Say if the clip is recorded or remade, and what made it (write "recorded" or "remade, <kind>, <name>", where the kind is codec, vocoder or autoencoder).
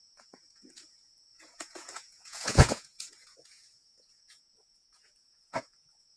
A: remade, vocoder, Vocos